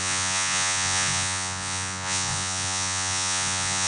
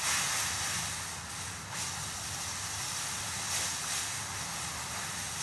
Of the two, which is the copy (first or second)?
first